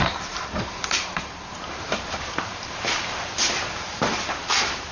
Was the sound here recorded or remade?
remade